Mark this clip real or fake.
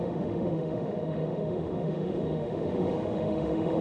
fake